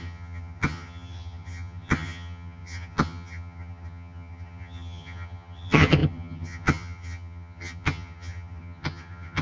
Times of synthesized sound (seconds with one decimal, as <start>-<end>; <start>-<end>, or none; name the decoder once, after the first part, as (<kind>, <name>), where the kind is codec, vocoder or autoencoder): 0.0-9.4 (vocoder, HiFi-GAN)